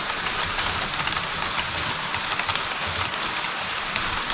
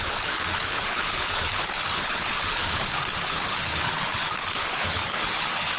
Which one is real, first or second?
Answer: first